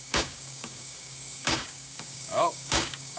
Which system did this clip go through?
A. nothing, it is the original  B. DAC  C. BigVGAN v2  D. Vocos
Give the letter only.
B